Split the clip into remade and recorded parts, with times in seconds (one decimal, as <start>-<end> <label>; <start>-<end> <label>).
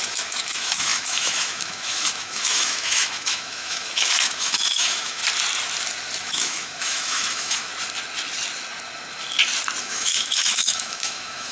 0.0-5.2 remade; 5.2-6.2 recorded; 6.2-7.7 remade; 7.7-9.8 recorded; 9.8-11.5 remade